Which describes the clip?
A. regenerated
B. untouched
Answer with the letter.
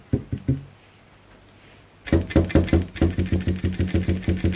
B